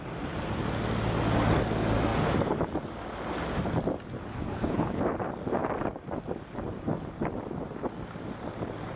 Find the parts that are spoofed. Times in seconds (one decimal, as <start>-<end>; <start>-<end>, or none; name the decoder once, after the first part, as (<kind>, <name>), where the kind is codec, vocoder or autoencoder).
4.3-5.0 (codec, HILCodec)